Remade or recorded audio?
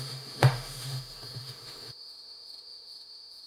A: remade